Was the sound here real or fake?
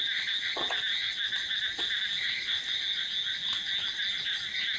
real